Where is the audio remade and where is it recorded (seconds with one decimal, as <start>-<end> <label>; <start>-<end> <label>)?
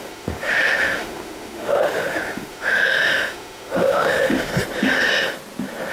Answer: 0.0-4.5 remade; 4.5-5.9 recorded